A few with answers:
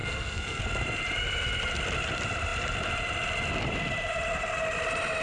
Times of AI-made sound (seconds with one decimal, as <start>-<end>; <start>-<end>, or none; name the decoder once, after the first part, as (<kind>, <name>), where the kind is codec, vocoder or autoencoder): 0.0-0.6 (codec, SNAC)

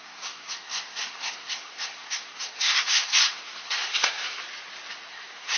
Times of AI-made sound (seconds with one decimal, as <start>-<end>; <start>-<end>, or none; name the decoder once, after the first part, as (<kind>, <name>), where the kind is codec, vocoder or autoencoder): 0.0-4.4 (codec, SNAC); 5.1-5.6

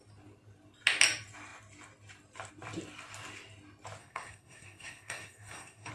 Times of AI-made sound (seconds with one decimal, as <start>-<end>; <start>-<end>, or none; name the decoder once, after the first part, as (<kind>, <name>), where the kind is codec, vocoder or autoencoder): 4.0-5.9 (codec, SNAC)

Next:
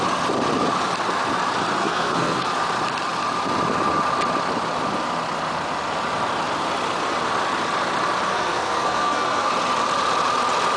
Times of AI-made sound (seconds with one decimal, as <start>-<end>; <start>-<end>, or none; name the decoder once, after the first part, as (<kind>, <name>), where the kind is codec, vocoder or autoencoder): 1.8-2.5 (codec, SNAC); 8.3-9.5